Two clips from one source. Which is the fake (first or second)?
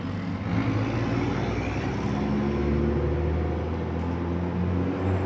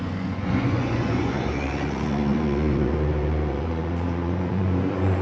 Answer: second